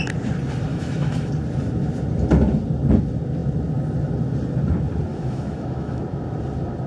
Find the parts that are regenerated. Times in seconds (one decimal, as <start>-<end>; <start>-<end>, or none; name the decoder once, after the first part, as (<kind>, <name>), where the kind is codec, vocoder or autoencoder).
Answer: 0.7-1.3 (autoencoder, DAC-VAE); 5.1-6.0